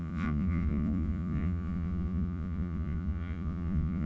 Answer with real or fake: fake